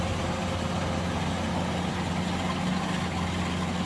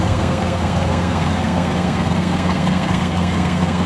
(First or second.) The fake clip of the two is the second